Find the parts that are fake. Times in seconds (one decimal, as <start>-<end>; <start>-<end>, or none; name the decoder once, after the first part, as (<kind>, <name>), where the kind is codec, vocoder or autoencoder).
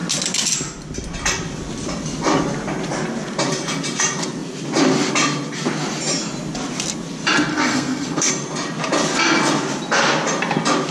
7.5-8.3 (codec, SNAC)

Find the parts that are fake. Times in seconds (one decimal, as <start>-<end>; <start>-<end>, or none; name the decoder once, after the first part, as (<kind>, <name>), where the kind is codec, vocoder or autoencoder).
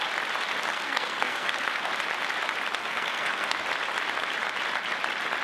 0.7-1.9 (codec, SNAC); 2.8-3.6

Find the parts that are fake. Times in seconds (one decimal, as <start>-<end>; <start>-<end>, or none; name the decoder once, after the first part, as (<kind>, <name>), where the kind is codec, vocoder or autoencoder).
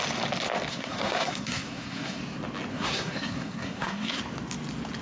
0.7-2.2 (codec, SNAC); 2.7-4.2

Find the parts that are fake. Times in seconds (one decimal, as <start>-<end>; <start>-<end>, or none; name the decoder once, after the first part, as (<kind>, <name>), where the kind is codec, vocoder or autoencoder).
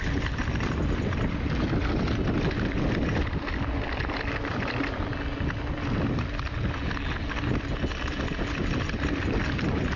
none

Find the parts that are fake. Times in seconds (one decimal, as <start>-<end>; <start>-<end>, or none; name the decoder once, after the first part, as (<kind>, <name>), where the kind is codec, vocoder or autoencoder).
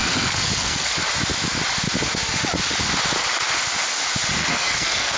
0.0-0.9 (codec, SNAC); 4.4-5.2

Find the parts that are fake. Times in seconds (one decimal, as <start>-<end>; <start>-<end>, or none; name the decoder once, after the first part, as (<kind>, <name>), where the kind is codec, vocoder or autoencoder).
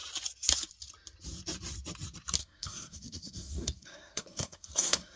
2.4-5.2 (codec, SNAC)